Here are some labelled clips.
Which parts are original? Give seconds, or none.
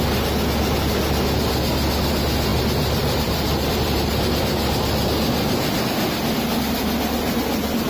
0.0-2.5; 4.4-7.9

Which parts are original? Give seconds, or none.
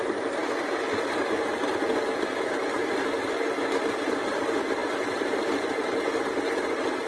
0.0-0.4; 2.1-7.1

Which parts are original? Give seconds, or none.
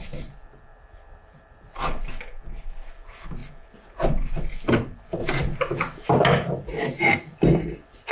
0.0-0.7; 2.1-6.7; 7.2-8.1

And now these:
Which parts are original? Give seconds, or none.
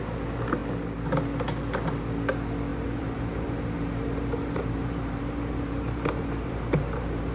0.0-2.7